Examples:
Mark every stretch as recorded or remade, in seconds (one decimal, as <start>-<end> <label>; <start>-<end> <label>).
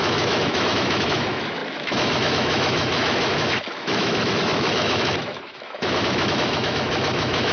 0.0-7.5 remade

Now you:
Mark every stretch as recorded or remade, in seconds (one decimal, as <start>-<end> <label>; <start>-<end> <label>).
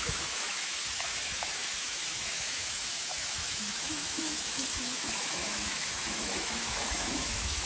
0.0-7.7 remade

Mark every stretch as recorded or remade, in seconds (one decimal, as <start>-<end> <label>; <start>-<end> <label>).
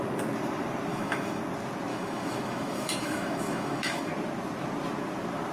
0.0-0.9 recorded; 0.9-1.4 remade; 1.4-1.9 recorded; 1.9-4.1 remade; 4.1-5.5 recorded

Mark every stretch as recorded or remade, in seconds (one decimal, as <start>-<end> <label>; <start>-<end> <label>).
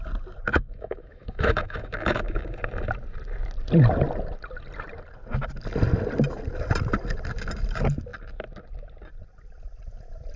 0.0-0.5 recorded; 0.5-2.5 remade; 2.5-10.4 recorded